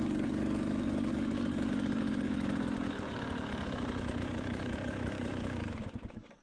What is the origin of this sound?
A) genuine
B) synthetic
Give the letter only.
B